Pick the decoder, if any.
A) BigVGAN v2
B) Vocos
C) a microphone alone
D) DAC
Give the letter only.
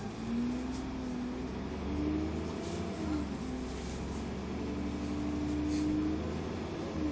C